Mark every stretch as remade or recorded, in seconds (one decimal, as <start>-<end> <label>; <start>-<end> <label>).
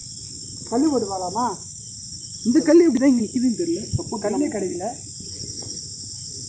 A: 0.0-6.5 recorded